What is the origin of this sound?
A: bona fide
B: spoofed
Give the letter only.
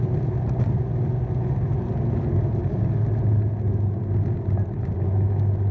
A